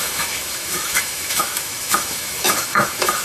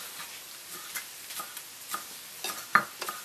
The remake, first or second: first